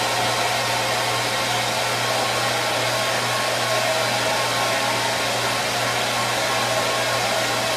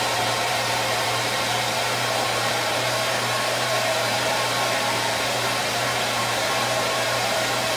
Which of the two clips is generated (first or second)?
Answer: second